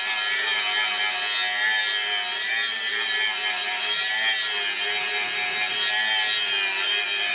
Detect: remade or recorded recorded